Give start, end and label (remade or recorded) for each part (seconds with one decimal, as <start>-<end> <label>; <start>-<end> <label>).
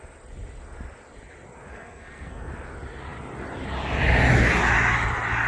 0.0-1.7 recorded; 1.7-2.5 remade; 2.5-5.5 recorded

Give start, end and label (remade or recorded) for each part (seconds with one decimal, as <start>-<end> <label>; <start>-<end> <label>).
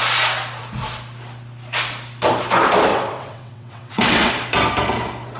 0.0-2.9 recorded; 2.9-4.3 remade; 4.3-5.4 recorded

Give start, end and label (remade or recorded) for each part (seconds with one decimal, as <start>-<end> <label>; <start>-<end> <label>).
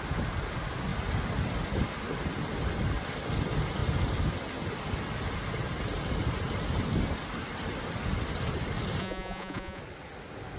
0.0-9.0 recorded; 9.0-9.8 remade; 9.8-10.6 recorded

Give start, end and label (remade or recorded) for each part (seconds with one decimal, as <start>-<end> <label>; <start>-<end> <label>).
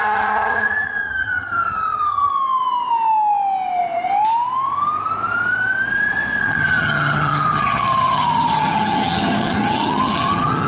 0.0-2.3 remade; 2.3-6.4 recorded; 6.4-10.7 remade